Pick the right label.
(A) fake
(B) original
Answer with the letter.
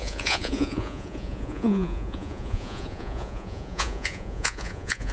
A